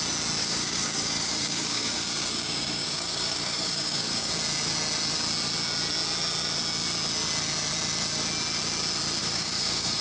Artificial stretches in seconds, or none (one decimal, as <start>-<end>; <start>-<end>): 0.4-4.3; 9.2-10.0